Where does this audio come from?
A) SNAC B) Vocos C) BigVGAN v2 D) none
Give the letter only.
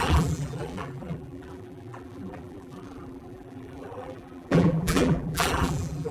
C